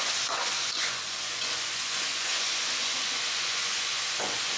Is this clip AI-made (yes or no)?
yes